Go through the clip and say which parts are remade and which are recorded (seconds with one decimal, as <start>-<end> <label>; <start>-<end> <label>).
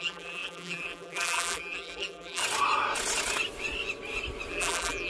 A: 0.0-2.4 remade; 2.4-4.5 recorded; 4.5-5.1 remade